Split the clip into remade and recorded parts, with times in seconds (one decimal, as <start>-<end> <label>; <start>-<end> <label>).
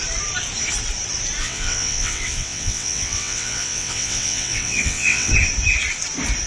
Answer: 0.0-1.4 recorded; 1.4-5.3 remade; 5.3-6.5 recorded